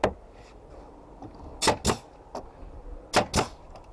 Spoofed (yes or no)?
no